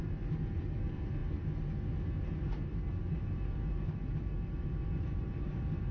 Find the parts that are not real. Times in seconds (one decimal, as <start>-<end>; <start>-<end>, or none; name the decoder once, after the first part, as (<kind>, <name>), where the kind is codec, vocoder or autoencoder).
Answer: 0.0-5.9 (vocoder, BigVGAN v2)